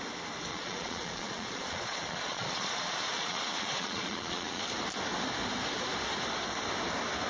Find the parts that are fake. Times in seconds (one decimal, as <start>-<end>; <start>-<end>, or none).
0.5-4.6